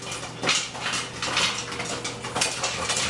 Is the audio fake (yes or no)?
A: no